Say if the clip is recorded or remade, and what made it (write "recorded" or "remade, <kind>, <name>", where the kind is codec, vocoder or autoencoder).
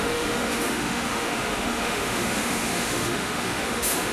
remade, autoencoder, DAC-VAE